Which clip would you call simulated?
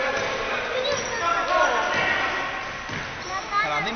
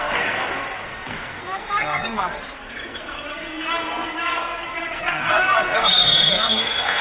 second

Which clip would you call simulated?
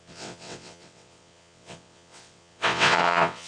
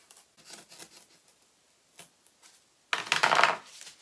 first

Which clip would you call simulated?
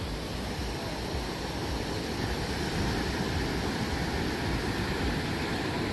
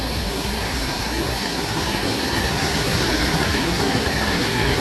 second